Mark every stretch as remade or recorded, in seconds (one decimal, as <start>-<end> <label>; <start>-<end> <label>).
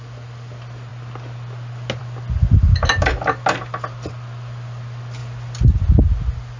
0.0-6.6 recorded